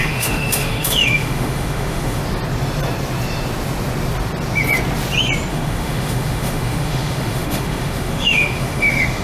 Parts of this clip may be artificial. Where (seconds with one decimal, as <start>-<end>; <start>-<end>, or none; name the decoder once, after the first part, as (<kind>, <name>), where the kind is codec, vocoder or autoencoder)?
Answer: 0.0-2.2 (autoencoder, DAC-VAE); 5.5-9.2